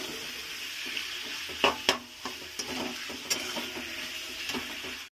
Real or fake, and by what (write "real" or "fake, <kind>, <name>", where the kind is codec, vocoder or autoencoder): real